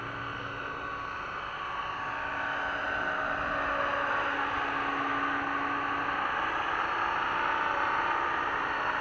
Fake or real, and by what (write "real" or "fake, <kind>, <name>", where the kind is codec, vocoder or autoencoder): real